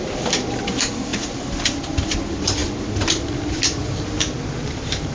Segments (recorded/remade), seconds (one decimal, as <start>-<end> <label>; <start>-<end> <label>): 0.0-5.1 remade